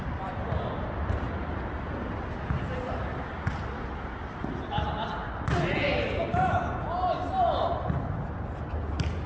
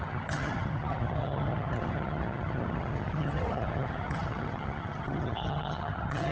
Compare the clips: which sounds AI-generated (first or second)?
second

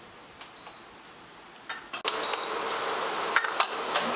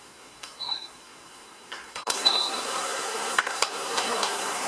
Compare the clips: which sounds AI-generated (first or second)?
second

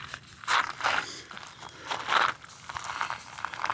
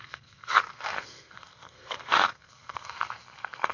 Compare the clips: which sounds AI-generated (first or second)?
second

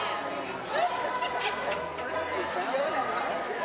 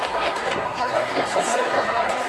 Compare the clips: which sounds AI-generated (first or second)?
second